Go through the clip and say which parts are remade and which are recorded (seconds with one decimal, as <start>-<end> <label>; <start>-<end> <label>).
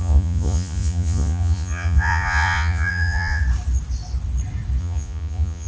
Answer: 0.0-3.4 remade; 3.4-4.8 recorded; 4.8-5.7 remade